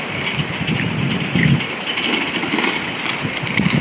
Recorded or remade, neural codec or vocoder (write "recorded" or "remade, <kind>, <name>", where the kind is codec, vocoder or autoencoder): recorded